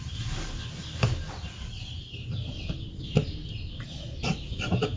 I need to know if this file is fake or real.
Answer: real